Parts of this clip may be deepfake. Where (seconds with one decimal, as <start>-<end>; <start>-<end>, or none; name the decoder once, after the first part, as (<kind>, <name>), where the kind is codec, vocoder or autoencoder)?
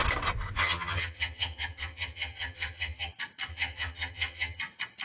0.6-3.1 (vocoder, HiFi-GAN); 3.5-4.6